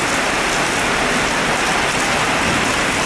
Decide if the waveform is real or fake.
real